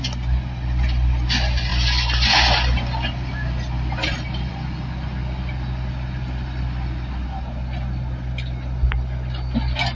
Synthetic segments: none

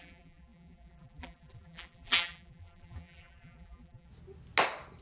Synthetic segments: 0.0-4.1

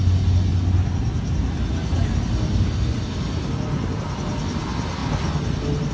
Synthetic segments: none

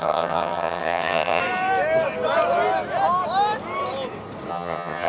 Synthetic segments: 0.0-1.4; 4.5-5.1

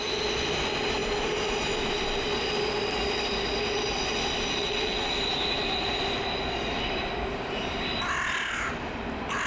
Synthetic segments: 4.6-5.1

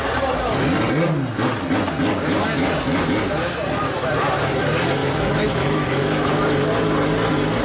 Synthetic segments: 5.0-6.3

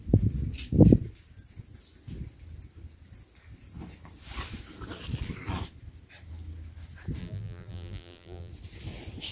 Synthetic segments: 7.2-8.5